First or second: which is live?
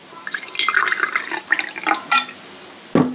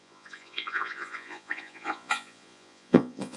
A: first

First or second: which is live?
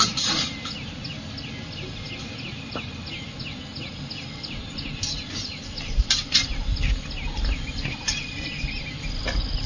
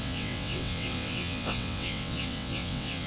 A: first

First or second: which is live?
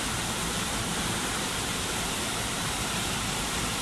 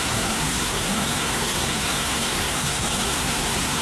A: first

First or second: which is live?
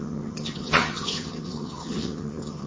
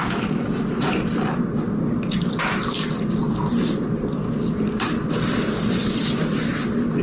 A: second